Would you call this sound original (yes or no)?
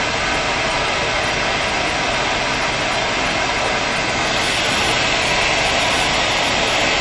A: yes